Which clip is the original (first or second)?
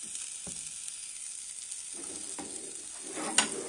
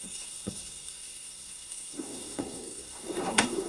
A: first